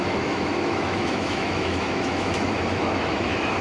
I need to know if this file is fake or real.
fake